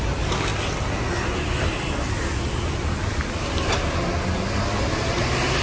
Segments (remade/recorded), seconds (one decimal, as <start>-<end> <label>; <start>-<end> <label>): 0.0-5.6 recorded